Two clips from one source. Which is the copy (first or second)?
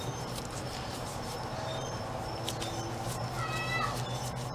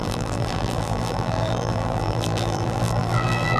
second